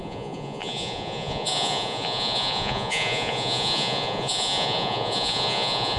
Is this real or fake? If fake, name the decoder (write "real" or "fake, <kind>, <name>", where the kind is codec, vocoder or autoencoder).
fake, vocoder, Vocos